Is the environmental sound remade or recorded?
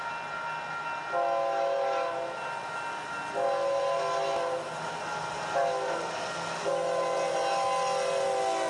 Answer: recorded